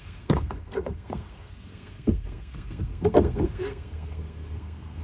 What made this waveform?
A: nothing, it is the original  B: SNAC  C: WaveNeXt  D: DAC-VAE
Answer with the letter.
B